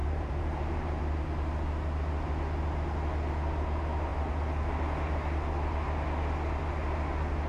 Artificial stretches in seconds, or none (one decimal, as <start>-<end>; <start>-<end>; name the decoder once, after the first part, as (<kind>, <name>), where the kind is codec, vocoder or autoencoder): 0.0-1.0 (vocoder, BigVGAN v2)